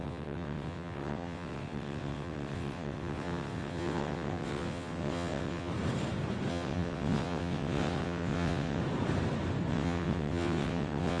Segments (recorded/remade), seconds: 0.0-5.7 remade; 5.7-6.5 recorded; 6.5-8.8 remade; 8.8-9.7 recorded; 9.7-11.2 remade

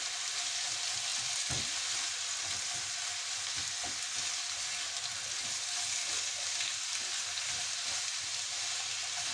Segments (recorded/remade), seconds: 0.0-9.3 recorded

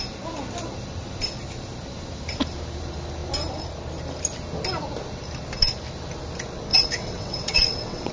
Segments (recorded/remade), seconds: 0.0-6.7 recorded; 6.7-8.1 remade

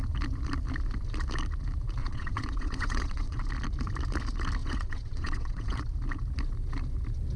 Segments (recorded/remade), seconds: 0.0-2.0 recorded; 2.0-3.4 remade; 3.4-4.6 recorded; 4.6-5.8 remade; 5.8-7.4 recorded